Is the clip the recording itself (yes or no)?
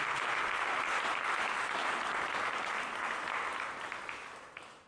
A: yes